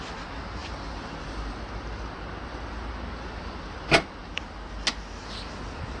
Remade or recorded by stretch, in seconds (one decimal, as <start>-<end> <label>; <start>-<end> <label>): 0.0-0.6 recorded; 0.6-1.5 remade; 1.5-6.0 recorded